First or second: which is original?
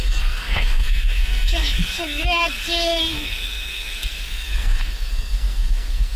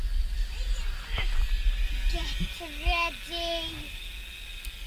second